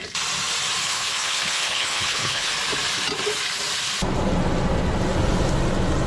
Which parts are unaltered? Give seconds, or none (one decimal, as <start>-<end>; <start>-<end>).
0.0-0.8; 2.5-6.1